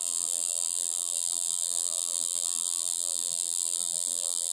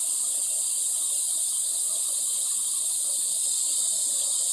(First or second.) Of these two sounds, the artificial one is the first